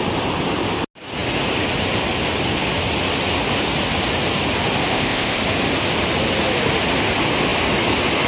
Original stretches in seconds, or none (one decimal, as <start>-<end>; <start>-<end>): 0.0-4.9; 5.4-8.3

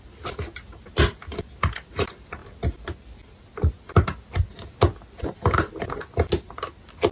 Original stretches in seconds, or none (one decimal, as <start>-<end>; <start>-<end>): 0.0-7.1

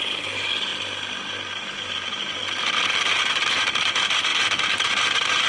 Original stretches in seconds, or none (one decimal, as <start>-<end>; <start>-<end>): 0.7-1.3; 2.4-3.0